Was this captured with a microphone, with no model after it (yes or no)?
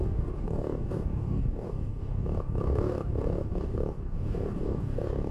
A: no